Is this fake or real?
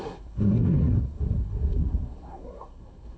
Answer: fake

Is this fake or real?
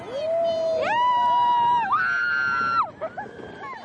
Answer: real